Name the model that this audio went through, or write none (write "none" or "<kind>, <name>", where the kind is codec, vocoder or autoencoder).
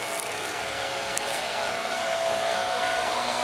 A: codec, SNAC